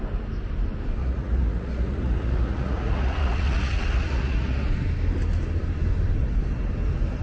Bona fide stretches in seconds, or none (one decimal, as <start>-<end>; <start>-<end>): 0.0-1.0; 4.7-7.2